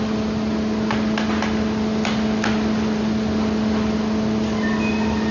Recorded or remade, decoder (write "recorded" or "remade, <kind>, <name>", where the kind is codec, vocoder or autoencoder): recorded